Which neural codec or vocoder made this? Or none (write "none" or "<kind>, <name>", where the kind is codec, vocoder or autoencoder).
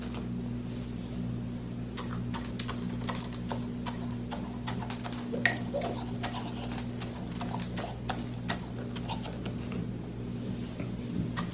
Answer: none